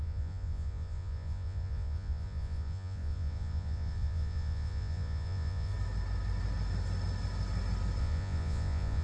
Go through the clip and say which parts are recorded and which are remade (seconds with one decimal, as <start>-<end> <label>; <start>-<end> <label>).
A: 0.0-5.7 remade; 5.7-8.0 recorded; 8.0-9.0 remade